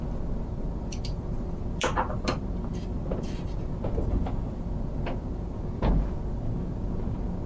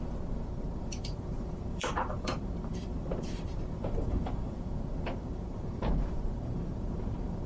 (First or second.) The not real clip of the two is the second